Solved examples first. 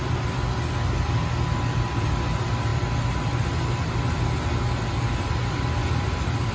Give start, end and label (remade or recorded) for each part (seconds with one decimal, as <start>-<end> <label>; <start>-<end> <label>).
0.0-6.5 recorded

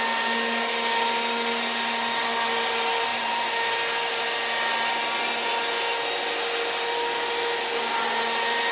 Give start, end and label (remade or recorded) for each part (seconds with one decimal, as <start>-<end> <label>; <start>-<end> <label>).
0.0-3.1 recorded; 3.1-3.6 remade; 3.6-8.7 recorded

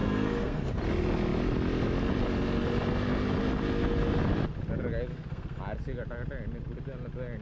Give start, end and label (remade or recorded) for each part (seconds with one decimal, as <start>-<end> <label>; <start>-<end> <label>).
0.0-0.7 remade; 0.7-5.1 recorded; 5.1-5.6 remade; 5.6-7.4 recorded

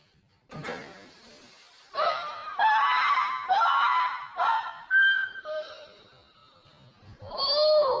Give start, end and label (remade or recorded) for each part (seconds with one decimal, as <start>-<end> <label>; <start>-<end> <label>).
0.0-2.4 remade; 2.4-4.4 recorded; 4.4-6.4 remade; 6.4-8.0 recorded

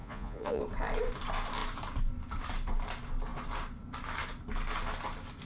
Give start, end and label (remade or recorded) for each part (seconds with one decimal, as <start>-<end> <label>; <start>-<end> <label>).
0.0-0.6 remade; 0.6-5.5 recorded